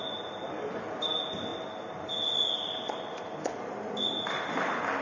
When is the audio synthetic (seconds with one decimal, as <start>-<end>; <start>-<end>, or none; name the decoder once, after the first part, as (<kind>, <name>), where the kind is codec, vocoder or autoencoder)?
none

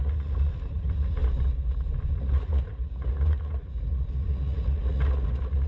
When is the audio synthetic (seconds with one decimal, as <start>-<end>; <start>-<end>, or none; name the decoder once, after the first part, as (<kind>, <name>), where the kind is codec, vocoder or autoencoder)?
0.0-1.2 (vocoder, Vocos); 2.1-5.7

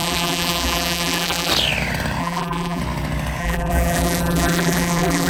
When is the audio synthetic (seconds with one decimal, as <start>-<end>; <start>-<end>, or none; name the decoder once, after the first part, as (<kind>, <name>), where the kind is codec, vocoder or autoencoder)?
0.0-1.5 (vocoder, BigVGAN v2); 2.2-2.8; 3.4-5.3

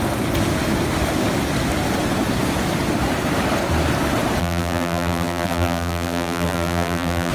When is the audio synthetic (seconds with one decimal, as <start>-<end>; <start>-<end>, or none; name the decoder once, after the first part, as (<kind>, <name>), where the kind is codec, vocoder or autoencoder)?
4.4-7.3 (vocoder, BigVGAN v2)